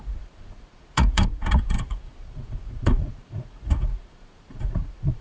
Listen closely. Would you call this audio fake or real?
fake